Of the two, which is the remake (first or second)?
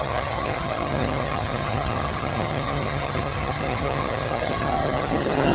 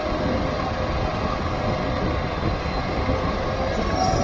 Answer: first